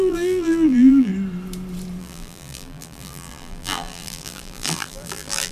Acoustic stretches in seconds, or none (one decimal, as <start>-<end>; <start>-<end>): 1.1-2.0